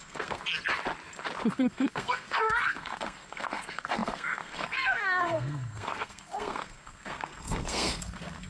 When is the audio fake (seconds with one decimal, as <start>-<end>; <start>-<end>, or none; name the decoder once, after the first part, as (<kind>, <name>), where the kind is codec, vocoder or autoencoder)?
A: 0.0-0.4 (codec, SNAC); 1.5-8.5